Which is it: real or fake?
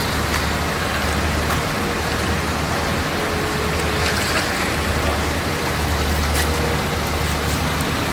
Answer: real